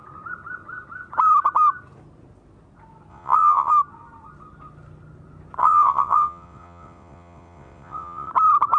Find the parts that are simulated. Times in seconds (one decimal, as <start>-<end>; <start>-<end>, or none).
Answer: 3.1-3.7; 5.6-8.3